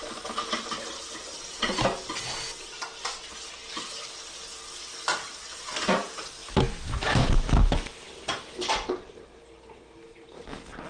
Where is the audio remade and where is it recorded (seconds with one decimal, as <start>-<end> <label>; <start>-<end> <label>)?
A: 0.0-6.4 recorded; 6.4-8.1 remade; 8.1-10.9 recorded